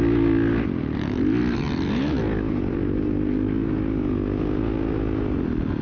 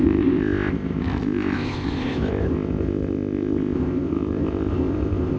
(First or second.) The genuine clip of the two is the first